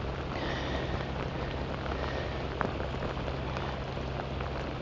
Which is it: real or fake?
real